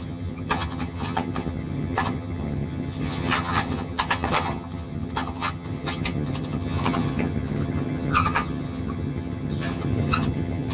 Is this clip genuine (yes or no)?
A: no